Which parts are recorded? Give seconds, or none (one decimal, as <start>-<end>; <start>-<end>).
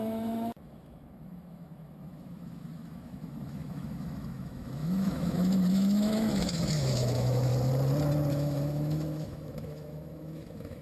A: 7.5-8.3